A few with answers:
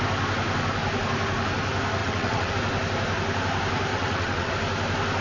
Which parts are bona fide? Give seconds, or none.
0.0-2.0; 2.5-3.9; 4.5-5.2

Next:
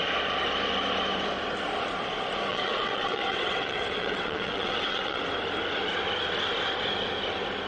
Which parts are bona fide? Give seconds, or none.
0.0-2.5; 5.2-7.7

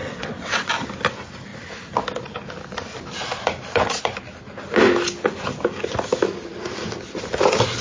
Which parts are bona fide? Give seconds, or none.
0.7-7.8